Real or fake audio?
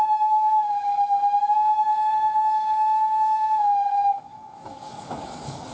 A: fake